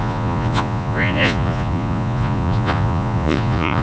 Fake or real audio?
fake